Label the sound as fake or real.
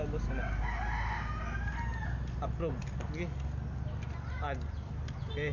real